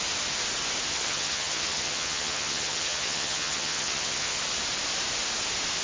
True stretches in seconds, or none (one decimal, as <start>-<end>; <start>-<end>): 0.0-0.9; 4.4-5.8